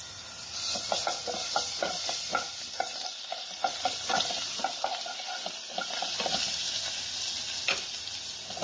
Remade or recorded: recorded